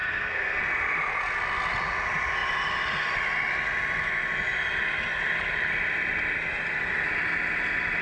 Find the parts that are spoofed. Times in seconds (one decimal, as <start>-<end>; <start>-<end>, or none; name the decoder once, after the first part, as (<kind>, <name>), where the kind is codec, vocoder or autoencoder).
0.0-0.6 (codec, SNAC)